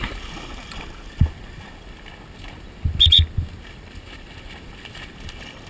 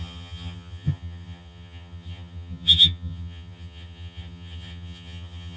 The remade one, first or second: second